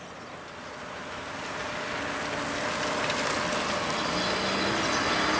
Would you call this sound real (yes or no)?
yes